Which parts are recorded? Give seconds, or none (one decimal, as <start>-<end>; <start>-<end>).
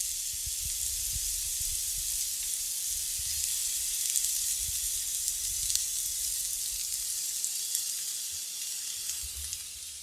0.0-1.7; 2.5-3.6; 4.5-10.0